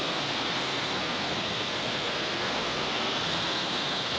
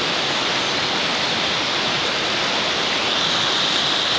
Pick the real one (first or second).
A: second